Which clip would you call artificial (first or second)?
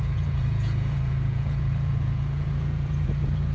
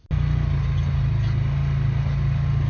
first